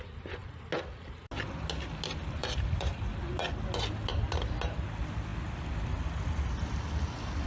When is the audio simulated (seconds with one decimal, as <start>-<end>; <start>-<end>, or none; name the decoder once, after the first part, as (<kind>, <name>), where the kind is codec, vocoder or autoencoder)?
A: 2.4-3.1 (vocoder, BigVGAN v2)